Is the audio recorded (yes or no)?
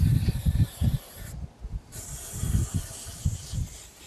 yes